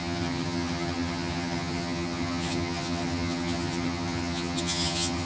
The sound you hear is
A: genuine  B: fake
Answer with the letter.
B